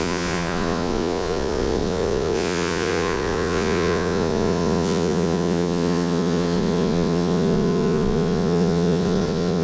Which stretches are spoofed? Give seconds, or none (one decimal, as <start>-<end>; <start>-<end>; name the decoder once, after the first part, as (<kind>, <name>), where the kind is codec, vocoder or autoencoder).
0.0-9.6 (vocoder, Vocos)